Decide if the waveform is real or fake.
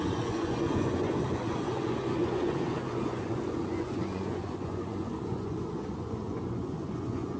fake